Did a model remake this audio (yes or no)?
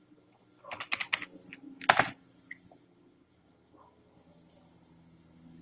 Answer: no